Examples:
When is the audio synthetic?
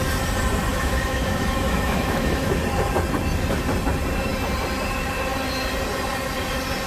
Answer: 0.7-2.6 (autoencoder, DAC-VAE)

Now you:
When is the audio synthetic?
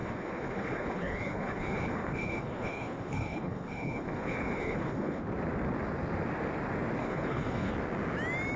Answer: 0.0-5.2 (codec, HILCodec); 7.0-7.7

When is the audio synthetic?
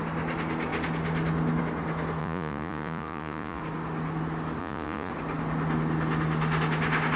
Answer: 2.2-3.6 (vocoder, Vocos); 4.6-5.1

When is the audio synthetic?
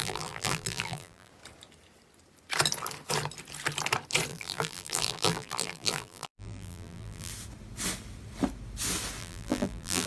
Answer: 0.0-1.3 (vocoder, BigVGAN v2); 4.3-7.3; 9.2-10.1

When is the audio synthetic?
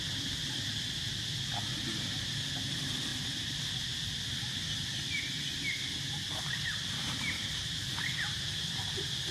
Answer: none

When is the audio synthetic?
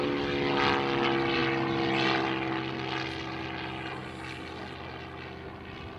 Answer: none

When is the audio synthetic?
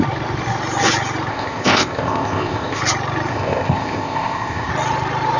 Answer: 1.3-2.8 (codec, ZipCodec); 3.3-4.7